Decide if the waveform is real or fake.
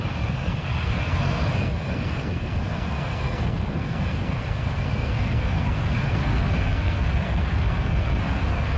fake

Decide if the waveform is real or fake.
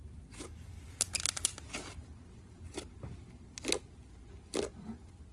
real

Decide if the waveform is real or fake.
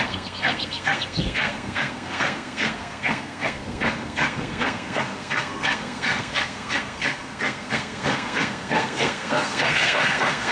fake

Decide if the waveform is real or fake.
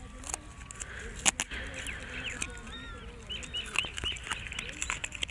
real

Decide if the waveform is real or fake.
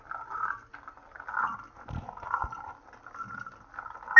real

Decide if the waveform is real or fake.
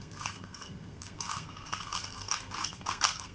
fake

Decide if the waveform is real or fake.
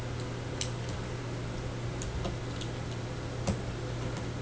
real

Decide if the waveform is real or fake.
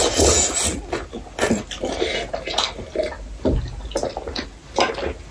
real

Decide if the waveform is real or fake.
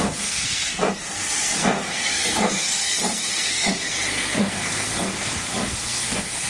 fake